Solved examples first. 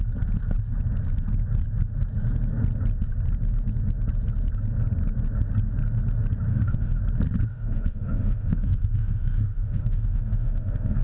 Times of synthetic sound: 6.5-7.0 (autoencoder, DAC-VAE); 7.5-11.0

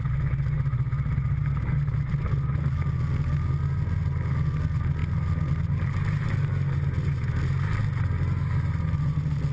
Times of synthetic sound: none

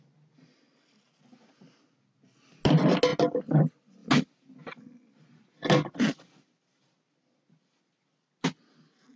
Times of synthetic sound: none